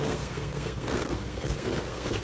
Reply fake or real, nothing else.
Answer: fake